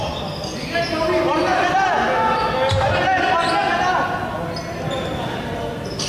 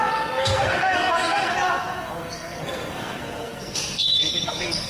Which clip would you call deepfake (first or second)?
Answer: second